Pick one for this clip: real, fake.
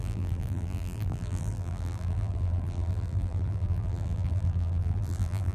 fake